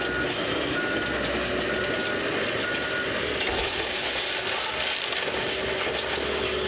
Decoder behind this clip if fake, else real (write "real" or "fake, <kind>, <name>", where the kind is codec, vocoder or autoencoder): real